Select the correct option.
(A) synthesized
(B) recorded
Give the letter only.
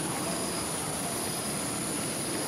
B